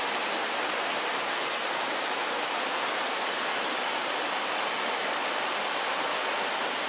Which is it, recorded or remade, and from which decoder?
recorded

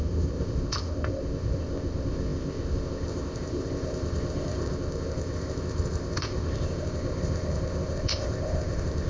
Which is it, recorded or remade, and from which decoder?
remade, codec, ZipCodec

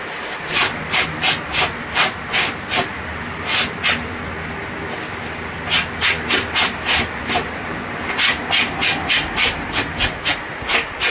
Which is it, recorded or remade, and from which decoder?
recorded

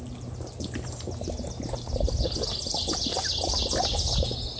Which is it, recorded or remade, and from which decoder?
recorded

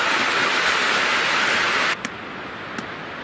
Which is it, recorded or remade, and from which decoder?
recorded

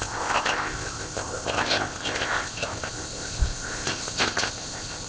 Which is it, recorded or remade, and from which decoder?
remade, codec, ZipCodec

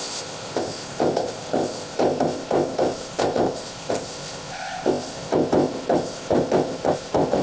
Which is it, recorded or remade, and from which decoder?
remade, codec, ZipCodec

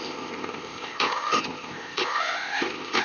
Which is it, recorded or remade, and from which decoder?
remade, codec, ZipCodec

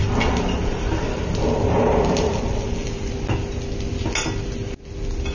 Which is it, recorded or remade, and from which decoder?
recorded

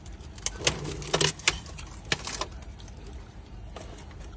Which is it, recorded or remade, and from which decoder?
recorded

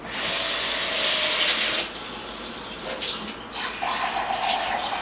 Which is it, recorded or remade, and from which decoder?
recorded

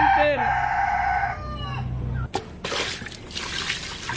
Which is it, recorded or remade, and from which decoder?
recorded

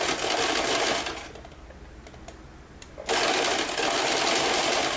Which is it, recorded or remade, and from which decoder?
recorded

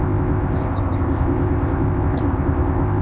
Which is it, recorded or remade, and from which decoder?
remade, codec, ZipCodec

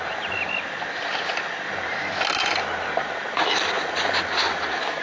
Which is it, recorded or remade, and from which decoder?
recorded